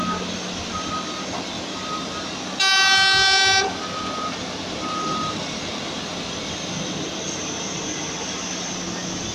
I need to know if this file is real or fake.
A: real